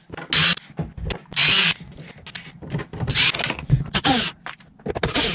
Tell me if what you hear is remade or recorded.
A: recorded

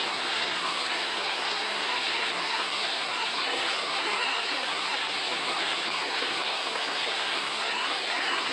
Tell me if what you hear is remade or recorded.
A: remade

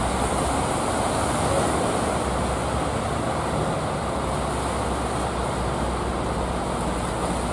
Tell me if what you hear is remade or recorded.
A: recorded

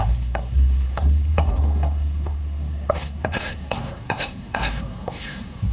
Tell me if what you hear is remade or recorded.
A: remade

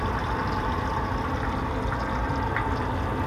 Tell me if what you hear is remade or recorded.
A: recorded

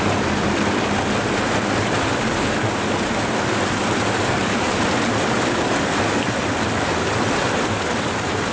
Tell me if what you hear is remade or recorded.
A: recorded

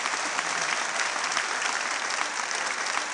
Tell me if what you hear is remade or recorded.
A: recorded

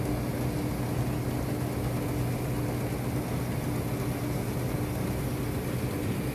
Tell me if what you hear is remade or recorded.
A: recorded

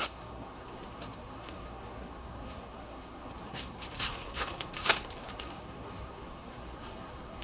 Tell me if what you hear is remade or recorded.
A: remade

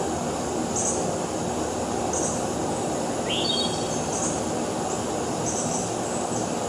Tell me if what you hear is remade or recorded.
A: recorded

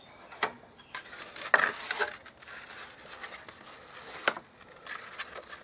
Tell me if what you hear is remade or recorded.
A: recorded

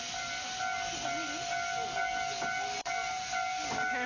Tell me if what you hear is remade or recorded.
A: recorded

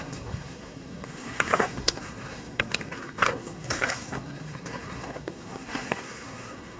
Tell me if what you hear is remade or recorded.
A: remade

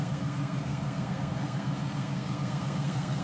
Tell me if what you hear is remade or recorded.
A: remade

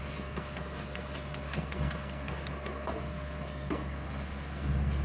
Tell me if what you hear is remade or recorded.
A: remade